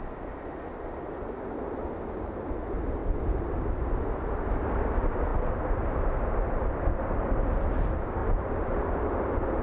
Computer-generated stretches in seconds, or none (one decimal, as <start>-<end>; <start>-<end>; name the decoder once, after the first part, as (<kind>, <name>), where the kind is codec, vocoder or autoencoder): none